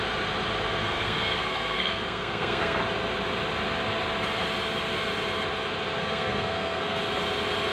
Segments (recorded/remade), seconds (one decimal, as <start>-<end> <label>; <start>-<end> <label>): 0.0-0.8 recorded; 0.8-2.8 remade; 2.8-6.0 recorded; 6.0-7.0 remade; 7.0-7.7 recorded